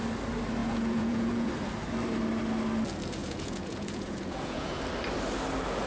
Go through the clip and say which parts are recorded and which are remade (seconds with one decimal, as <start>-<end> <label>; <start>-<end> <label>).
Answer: 0.0-0.6 recorded; 0.6-1.5 remade; 1.5-3.2 recorded; 3.2-4.8 remade; 4.8-5.9 recorded